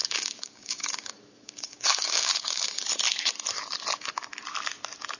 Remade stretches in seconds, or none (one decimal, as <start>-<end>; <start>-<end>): 0.0-2.8